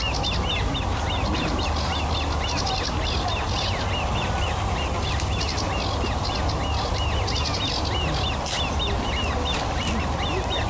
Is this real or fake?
real